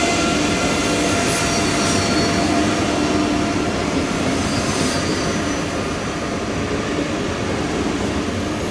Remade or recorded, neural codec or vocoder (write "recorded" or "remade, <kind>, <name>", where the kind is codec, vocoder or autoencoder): recorded